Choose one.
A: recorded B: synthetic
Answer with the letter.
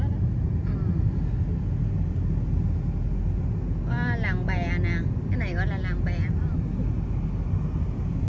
A